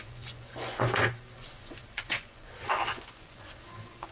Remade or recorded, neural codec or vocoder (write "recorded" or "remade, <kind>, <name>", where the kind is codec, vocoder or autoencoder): remade, vocoder, Vocos